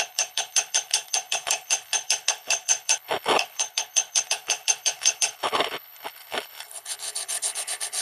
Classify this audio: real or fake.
fake